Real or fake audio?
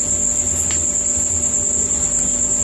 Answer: real